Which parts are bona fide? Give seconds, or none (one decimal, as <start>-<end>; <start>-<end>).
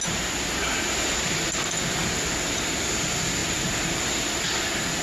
0.0-5.0